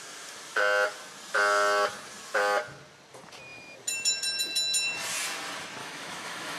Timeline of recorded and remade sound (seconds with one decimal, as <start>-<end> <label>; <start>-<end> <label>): 0.0-5.8 recorded; 5.8-6.6 remade